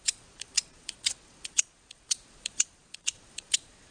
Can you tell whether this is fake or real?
fake